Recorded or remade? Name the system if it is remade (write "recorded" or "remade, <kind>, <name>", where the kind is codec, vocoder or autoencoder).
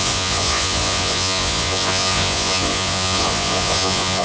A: remade, vocoder, Vocos